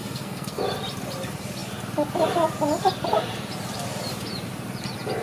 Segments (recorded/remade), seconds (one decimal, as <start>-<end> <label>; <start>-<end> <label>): 0.0-0.6 remade; 0.6-5.2 recorded